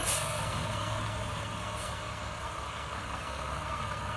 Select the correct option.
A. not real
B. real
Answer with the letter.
A